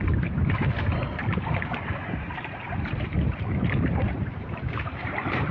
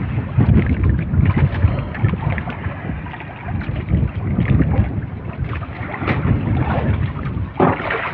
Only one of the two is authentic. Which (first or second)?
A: second